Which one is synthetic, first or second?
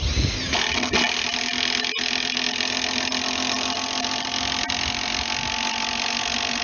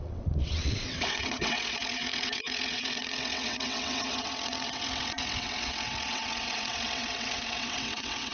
second